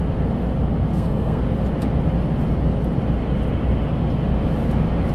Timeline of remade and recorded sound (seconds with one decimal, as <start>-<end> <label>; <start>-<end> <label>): 0.0-0.9 recorded; 0.9-1.4 remade; 1.4-5.1 recorded